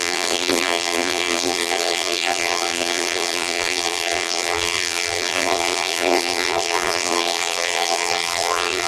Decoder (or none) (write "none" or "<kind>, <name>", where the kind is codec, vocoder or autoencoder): vocoder, BigVGAN v2